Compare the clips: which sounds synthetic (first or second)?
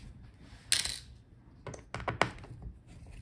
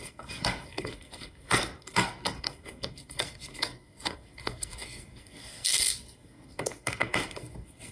second